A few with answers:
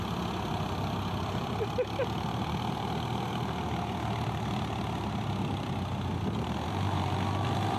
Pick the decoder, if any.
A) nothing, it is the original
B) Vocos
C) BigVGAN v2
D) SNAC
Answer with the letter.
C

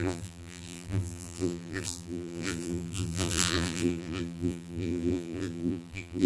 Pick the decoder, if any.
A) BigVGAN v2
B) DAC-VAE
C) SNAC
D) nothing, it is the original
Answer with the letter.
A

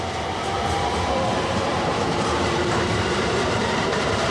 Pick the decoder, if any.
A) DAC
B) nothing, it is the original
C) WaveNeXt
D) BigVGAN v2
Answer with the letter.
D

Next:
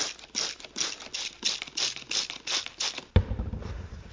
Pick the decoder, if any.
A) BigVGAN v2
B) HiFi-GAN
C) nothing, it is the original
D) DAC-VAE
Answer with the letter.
C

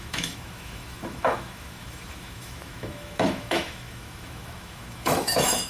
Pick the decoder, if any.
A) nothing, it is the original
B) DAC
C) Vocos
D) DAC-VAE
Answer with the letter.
D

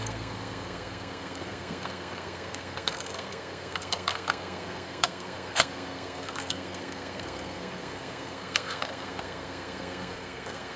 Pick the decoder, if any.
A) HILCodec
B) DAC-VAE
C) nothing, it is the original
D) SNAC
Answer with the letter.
D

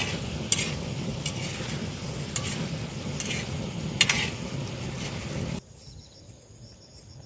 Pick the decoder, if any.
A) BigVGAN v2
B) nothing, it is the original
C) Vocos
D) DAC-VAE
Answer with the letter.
B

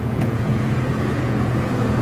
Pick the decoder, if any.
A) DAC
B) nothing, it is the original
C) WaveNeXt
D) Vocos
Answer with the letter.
D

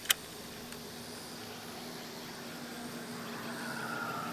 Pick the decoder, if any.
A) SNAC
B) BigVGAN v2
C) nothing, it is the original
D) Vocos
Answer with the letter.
C